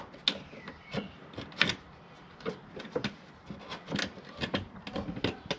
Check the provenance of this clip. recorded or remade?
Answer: recorded